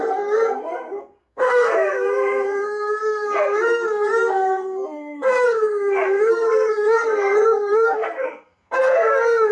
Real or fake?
fake